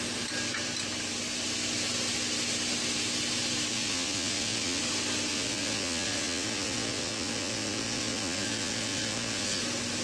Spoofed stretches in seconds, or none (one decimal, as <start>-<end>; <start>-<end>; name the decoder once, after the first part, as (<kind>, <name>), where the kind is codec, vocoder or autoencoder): 3.7-4.8 (vocoder, Vocos); 5.3-9.6